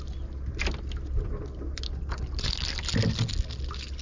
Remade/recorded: recorded